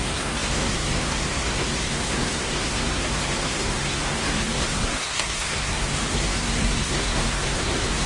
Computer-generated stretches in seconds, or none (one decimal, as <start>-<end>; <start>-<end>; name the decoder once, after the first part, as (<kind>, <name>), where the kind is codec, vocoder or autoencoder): 0.0-8.1 (codec, SNAC)